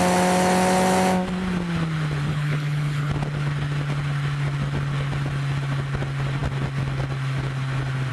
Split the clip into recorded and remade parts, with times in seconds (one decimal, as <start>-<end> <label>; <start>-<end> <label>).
0.0-2.3 recorded; 2.3-3.1 remade; 3.1-8.1 recorded